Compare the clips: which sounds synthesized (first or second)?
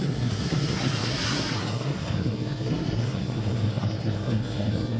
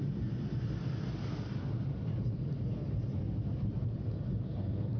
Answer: first